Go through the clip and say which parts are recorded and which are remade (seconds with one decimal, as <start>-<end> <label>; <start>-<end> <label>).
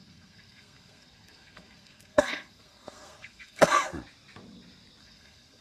0.0-3.9 remade; 3.9-5.0 recorded; 5.0-5.6 remade